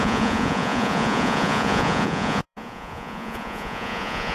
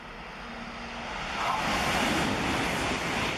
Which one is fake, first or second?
first